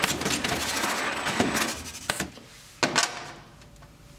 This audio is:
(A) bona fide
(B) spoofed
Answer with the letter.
A